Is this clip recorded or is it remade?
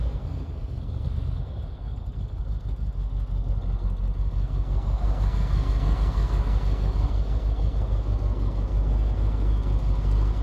remade